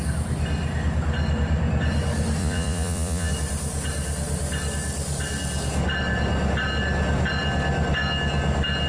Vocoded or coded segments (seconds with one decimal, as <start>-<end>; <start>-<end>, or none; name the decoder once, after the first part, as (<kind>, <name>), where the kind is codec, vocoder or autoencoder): 2.4-3.3 (vocoder, Vocos)